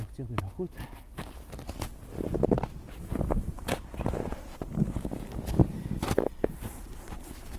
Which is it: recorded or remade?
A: recorded